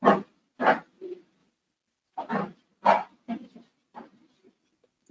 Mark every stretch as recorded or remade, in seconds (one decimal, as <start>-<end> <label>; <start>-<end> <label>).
0.0-5.1 recorded